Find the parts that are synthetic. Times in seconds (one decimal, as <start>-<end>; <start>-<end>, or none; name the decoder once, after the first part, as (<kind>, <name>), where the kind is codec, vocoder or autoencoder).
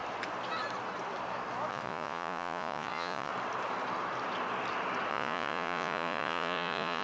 1.7-3.3 (vocoder, Vocos); 5.1-7.0